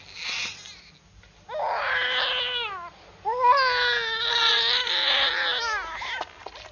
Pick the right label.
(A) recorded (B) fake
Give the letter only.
A